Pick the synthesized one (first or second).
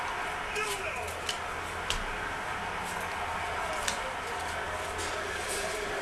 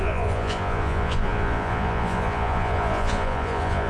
second